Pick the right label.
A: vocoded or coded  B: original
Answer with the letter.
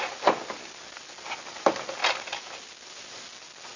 B